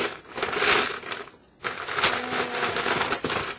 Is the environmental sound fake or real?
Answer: real